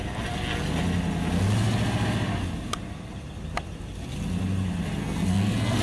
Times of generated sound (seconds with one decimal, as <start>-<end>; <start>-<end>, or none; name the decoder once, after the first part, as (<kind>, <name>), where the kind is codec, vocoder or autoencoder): 5.0-5.8 (codec, SNAC)

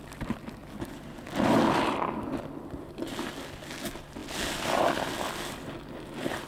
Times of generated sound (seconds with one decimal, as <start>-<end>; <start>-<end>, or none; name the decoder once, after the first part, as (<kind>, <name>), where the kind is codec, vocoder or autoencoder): none

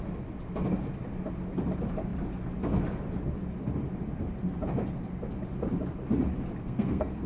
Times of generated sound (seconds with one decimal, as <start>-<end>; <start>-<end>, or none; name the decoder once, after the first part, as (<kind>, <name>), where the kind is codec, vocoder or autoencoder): 6.6-7.3 (codec, SNAC)